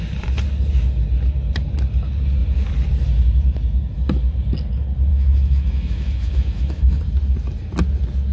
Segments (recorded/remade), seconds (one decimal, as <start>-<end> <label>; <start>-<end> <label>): 0.0-5.1 recorded; 5.1-7.0 remade; 7.0-8.3 recorded